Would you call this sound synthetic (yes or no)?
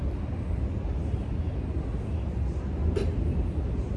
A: no